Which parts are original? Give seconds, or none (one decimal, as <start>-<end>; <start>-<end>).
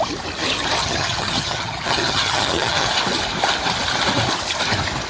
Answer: 0.0-0.8; 2.9-5.1